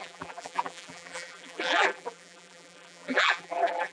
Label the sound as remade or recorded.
remade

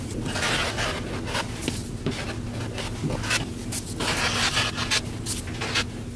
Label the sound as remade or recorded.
recorded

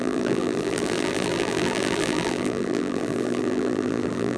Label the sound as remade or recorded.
remade